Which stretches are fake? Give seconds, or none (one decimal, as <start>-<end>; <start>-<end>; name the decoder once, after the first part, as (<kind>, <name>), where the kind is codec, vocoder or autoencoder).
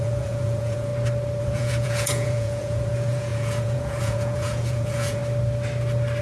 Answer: 0.0-0.9 (vocoder, Vocos); 1.4-5.2